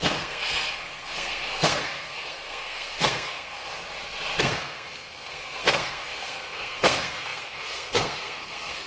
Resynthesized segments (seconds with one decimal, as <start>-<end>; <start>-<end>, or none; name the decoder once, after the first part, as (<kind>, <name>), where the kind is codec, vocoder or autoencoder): 0.0-3.7 (codec, SNAC); 4.4-8.9